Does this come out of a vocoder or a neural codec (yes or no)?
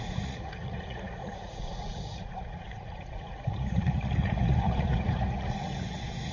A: yes